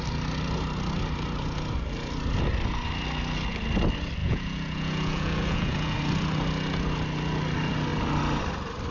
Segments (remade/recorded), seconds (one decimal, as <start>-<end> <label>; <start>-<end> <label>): 0.0-4.2 recorded; 4.2-6.0 remade; 6.0-8.9 recorded